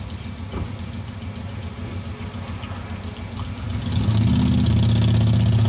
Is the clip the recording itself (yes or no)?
yes